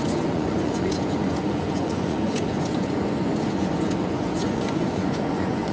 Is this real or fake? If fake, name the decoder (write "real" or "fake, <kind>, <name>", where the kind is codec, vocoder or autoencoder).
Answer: fake, vocoder, Vocos